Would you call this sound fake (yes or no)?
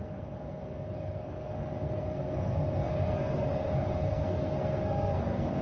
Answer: yes